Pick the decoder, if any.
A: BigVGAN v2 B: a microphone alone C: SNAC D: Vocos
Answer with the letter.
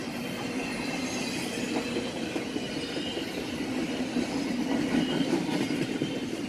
B